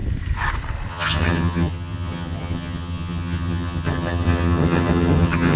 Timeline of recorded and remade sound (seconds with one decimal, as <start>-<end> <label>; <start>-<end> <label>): 0.0-0.9 recorded; 0.9-5.6 remade